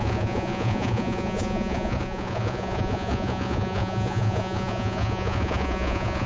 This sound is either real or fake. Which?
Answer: fake